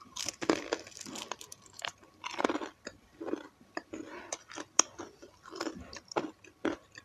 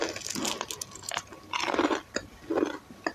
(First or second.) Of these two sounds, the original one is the second